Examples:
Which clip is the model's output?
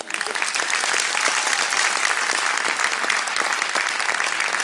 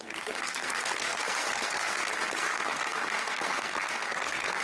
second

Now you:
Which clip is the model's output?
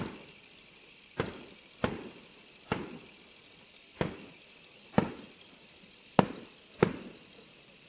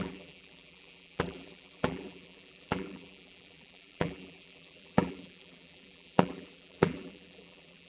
second